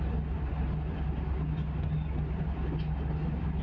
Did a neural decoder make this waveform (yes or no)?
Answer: no